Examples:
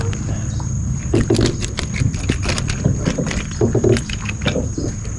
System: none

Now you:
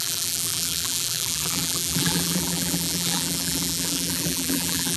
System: vocoder, BigVGAN v2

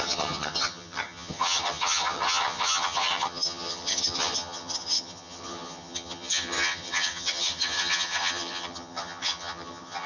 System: vocoder, HiFi-GAN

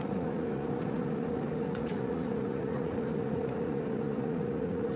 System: vocoder, Vocos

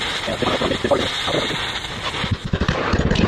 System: none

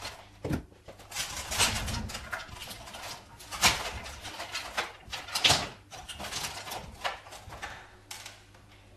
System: none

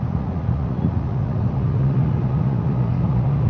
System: vocoder, Vocos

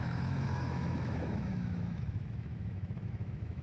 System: autoencoder, DAC-VAE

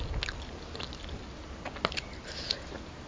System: none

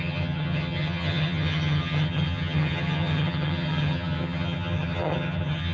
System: vocoder, HiFi-GAN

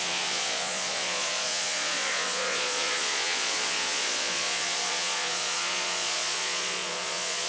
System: vocoder, Vocos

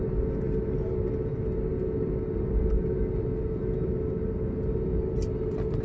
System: none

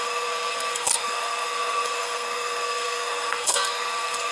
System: codec, SNAC